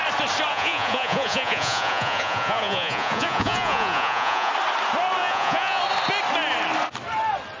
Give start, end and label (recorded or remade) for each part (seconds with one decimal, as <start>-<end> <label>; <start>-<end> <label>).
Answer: 0.0-0.5 recorded; 0.5-4.5 remade; 4.5-5.2 recorded; 5.2-5.8 remade; 5.8-7.6 recorded

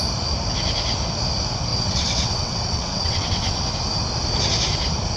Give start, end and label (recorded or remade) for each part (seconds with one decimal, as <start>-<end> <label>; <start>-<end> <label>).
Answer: 0.0-1.7 recorded; 1.7-3.7 remade; 3.7-5.2 recorded

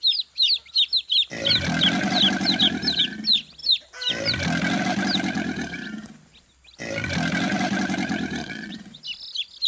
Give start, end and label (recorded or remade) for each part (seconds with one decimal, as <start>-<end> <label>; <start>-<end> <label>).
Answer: 0.0-8.4 recorded; 8.4-9.0 remade; 9.0-9.7 recorded

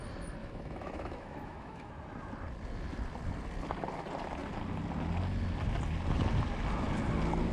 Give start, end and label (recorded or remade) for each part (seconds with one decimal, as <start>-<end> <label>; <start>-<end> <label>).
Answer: 0.0-0.4 recorded; 0.4-1.9 remade; 1.9-7.5 recorded

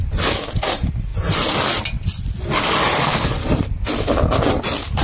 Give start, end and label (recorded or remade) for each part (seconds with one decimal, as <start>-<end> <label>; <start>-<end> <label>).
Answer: 0.0-5.0 recorded

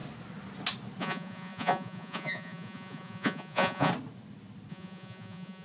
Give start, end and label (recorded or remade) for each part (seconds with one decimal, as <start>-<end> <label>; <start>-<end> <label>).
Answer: 0.0-1.0 recorded; 1.0-3.9 remade; 3.9-4.7 recorded; 4.7-5.6 remade